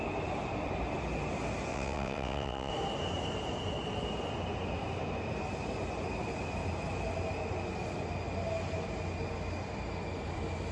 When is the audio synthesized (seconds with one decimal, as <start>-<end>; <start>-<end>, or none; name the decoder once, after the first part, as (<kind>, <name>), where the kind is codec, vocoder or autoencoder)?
1.7-2.7 (vocoder, WaveNeXt)